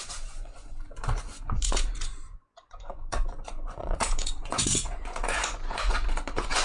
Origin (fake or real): fake